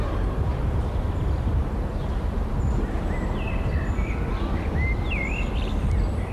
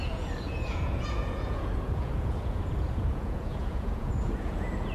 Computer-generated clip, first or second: second